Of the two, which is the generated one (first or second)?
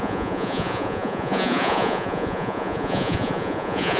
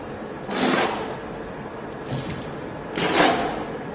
first